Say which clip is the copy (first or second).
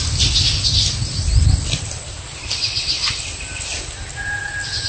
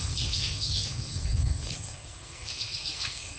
second